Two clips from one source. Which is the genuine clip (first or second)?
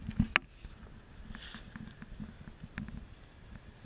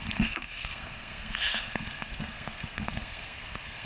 first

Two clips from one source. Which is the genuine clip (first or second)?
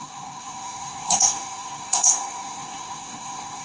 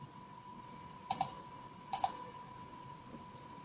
second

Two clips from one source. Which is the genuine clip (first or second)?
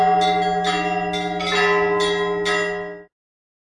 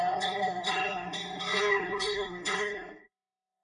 first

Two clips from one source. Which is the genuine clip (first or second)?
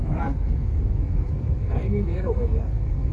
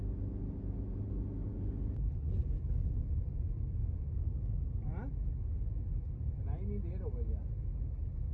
second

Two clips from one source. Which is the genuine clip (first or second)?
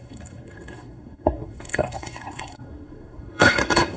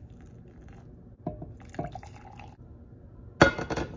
second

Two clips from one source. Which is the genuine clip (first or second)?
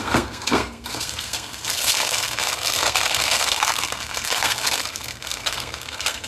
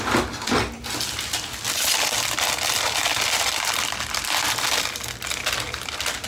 second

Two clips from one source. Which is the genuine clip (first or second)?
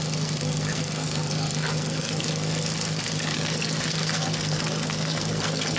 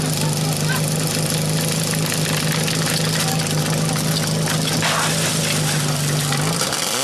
second